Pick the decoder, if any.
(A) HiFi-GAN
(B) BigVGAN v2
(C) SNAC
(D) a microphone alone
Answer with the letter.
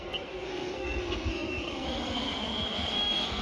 C